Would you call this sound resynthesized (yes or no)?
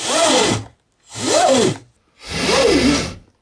no